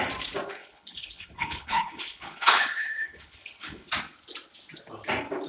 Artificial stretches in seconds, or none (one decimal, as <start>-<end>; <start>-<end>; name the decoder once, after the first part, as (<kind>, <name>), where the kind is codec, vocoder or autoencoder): 0.6-3.9 (codec, HILCodec)